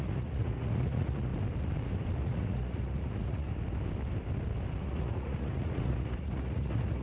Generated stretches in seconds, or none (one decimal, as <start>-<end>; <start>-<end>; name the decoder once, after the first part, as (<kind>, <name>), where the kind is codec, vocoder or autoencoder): 0.0-1.3 (vocoder, Vocos); 2.2-3.5; 4.8-7.0